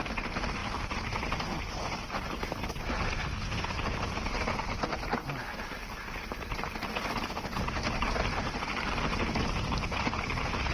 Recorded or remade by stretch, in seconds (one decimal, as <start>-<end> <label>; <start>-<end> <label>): 0.0-10.7 recorded